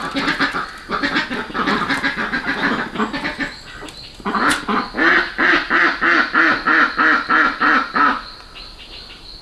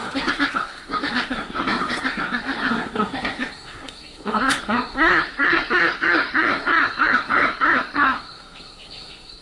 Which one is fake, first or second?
second